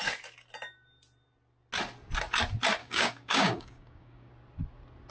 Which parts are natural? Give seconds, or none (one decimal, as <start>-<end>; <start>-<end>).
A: 0.0-2.8; 4.3-5.1

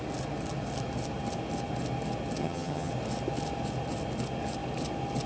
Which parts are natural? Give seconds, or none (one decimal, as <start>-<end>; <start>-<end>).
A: 0.0-2.4; 2.9-5.3

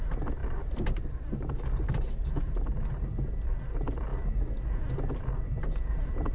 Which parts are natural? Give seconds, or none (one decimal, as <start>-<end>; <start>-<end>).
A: 0.0-6.3

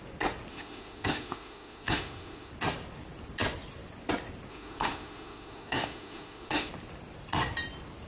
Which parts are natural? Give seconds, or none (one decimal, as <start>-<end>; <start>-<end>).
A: 0.0-0.5; 2.5-4.5; 6.7-8.1